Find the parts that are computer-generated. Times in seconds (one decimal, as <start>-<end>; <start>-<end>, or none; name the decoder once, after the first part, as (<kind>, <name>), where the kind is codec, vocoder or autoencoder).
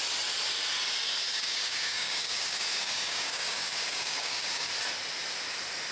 1.3-4.7 (codec, DAC)